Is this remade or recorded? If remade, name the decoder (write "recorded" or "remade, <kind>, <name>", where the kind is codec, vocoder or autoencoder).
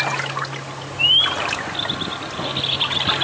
recorded